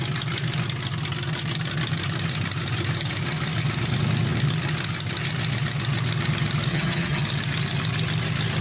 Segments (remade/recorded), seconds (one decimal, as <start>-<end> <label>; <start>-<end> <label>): 0.0-6.7 recorded; 6.7-7.2 remade; 7.2-8.6 recorded